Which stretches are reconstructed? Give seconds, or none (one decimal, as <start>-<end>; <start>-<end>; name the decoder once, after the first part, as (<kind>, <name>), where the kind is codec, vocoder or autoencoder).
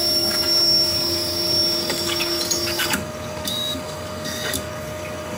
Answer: 0.0-5.4 (codec, DAC)